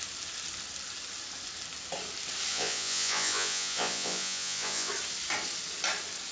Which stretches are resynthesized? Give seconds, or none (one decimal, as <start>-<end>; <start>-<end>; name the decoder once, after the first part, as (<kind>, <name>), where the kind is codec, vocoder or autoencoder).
2.5-4.9 (vocoder, Vocos)